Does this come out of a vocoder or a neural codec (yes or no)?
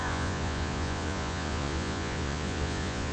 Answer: yes